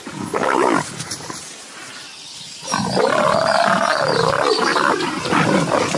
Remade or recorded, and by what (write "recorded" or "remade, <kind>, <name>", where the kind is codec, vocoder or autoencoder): recorded